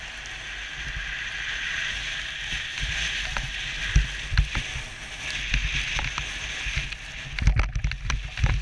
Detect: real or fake real